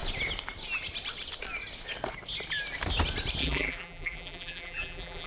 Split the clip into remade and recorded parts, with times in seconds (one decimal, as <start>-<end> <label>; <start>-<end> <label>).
0.0-3.4 recorded; 3.4-5.3 remade